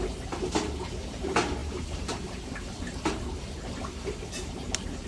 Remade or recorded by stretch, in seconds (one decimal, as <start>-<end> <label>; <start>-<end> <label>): 0.0-5.1 recorded